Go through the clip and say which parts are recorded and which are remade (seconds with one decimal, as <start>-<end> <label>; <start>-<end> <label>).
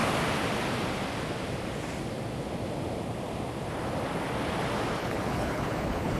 0.0-5.0 recorded; 5.0-6.2 remade